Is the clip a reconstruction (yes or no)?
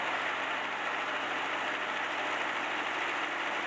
no